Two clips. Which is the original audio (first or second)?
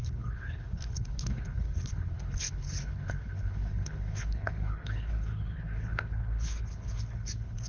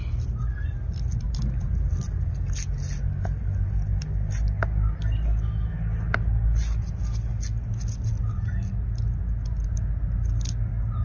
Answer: second